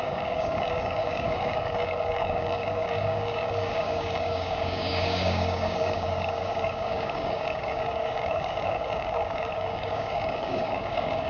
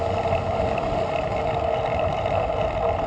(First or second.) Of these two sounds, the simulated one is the first